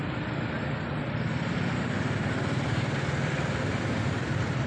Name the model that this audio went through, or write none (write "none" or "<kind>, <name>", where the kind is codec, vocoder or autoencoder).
none